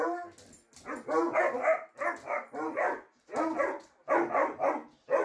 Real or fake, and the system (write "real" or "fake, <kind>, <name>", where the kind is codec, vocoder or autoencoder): real